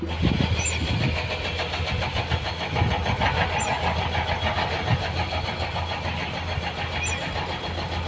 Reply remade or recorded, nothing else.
recorded